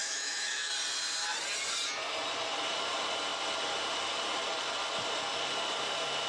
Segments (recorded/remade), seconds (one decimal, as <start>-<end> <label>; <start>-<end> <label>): 0.0-0.7 remade; 0.7-6.3 recorded